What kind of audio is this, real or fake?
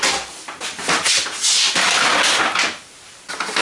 real